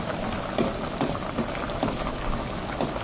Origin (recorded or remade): recorded